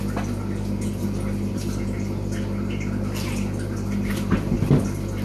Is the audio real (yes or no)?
yes